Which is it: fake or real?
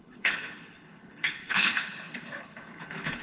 fake